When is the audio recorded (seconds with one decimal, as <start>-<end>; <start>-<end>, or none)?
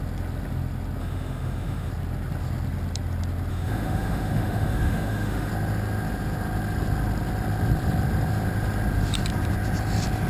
0.0-1.0; 1.9-3.5; 5.5-10.3